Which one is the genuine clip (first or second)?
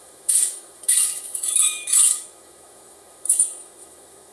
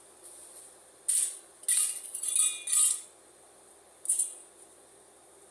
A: second